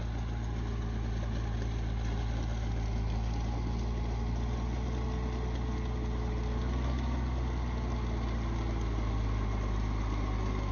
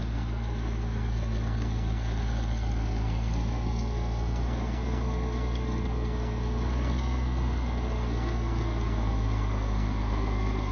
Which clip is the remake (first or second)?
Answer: second